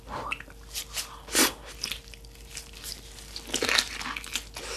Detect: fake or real real